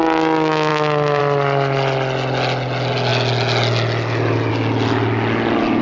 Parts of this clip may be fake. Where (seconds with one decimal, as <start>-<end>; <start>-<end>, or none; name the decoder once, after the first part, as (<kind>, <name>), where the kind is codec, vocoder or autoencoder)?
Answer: none

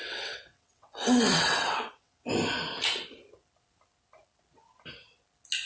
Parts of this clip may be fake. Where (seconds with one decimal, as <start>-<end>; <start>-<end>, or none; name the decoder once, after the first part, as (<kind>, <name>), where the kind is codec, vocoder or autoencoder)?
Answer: 0.0-2.3 (vocoder, WaveNeXt)

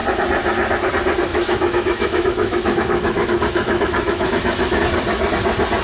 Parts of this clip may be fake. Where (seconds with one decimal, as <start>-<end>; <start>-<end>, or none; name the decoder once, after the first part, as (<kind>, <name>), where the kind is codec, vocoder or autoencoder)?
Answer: 1.3-4.8 (autoencoder, DAC-VAE)

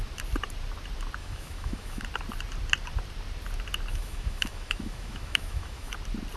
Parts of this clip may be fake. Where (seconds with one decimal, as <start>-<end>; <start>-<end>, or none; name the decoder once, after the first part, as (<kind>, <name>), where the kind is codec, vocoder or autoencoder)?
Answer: 1.2-2.0 (autoencoder, DAC-VAE); 3.9-5.9

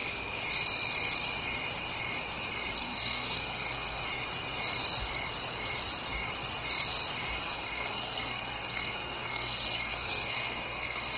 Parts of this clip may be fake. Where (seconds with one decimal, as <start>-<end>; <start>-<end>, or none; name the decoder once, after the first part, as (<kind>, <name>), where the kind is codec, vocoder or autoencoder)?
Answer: 2.8-4.0 (codec, SNAC); 7.4-11.2